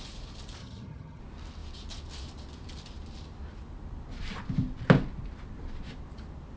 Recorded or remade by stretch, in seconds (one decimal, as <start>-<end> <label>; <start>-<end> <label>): 0.0-0.6 recorded; 0.6-1.2 remade; 1.2-6.6 recorded